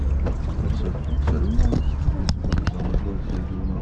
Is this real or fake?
real